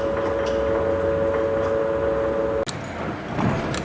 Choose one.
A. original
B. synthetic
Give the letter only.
A